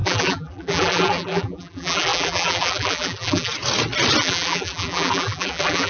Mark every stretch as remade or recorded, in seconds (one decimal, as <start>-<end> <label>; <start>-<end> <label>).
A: 0.0-3.5 remade; 3.5-4.2 recorded; 4.2-5.9 remade